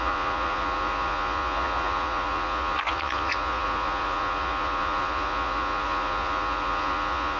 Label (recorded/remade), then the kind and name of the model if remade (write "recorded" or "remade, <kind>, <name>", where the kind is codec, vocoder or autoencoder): remade, vocoder, Vocos